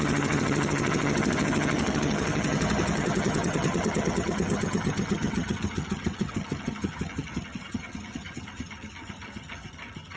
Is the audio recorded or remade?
remade